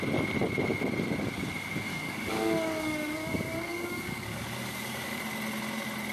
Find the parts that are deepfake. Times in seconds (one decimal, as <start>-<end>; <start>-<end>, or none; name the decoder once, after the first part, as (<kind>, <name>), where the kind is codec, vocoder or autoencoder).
1.9-5.2 (codec, DAC)